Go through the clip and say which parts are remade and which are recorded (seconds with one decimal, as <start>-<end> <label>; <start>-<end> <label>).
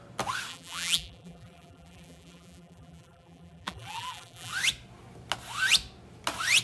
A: 0.0-0.5 recorded; 0.5-4.5 remade; 4.5-6.6 recorded